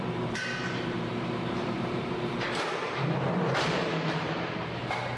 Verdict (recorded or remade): remade